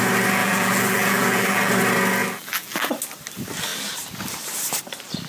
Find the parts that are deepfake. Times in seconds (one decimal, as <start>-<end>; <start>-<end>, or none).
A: 0.4-1.7; 2.2-2.9